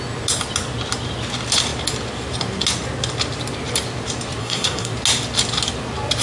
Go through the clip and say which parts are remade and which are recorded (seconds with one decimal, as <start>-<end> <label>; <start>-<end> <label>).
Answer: 0.0-4.4 recorded; 4.4-4.9 remade; 4.9-6.2 recorded